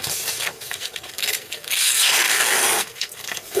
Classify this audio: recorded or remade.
remade